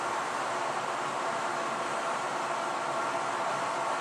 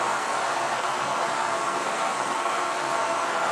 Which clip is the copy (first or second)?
second